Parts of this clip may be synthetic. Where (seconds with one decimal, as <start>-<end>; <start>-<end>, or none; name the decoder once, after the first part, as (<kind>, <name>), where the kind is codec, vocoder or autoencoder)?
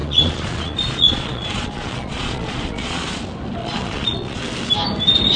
0.0-3.2 (vocoder, Vocos); 3.6-4.4